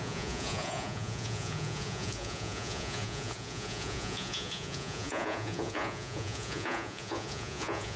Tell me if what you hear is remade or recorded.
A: remade